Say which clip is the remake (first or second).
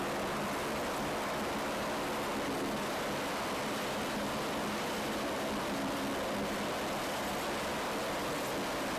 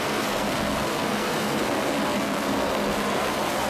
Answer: second